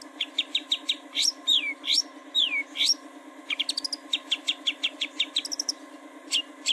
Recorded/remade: recorded